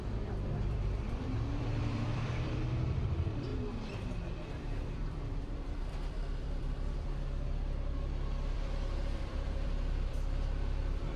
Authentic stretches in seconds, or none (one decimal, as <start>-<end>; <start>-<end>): 3.5-4.5